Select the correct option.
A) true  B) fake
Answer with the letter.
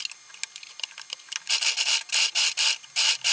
A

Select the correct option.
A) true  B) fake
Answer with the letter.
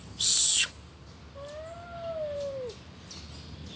A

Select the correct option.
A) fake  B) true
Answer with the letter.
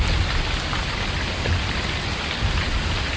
B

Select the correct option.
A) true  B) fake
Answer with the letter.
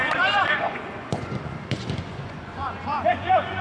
B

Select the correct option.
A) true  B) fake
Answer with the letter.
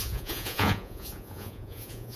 B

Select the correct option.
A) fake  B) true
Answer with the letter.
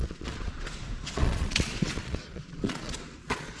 A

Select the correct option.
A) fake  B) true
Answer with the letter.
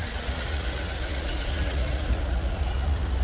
A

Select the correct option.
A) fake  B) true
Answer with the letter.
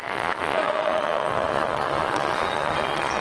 A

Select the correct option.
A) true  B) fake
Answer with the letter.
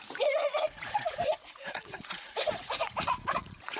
B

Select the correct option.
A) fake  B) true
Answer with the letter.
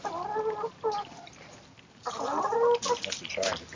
B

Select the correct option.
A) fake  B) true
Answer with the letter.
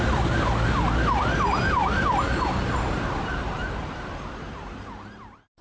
B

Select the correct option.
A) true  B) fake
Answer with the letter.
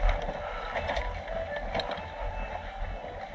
A